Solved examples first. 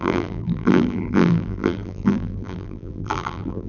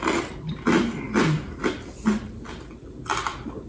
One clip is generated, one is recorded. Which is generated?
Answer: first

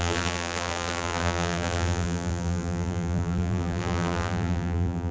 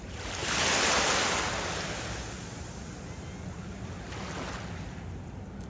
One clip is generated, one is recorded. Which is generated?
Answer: first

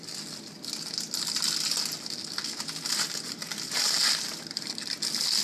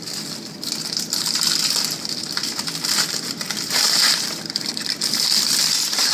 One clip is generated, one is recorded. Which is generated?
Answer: second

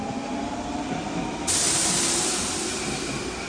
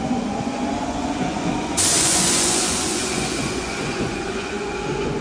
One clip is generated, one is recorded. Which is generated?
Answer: second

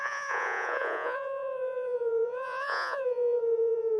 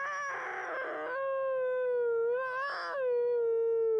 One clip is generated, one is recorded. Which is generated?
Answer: first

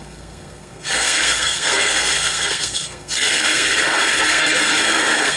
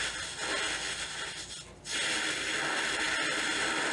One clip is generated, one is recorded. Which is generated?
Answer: first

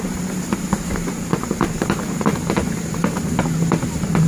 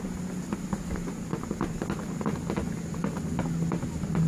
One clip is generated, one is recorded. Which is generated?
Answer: first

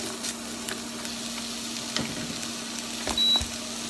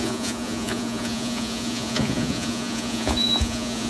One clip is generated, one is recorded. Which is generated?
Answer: second